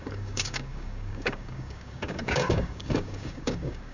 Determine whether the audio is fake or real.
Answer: fake